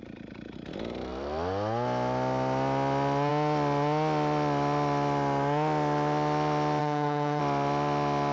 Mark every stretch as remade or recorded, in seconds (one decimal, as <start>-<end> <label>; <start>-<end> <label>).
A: 0.0-6.8 recorded; 6.8-7.4 remade; 7.4-8.3 recorded